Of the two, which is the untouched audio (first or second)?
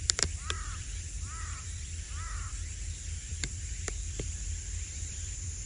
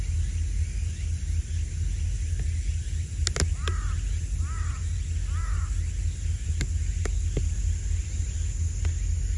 second